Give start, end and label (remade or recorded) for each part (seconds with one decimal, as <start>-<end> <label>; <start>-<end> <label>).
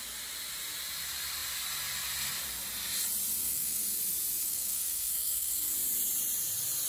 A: 0.0-3.4 recorded; 3.4-4.0 remade; 4.0-4.4 recorded; 4.4-5.7 remade; 5.7-6.9 recorded